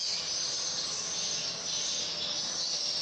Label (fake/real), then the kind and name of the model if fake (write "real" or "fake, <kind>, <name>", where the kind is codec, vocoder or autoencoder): real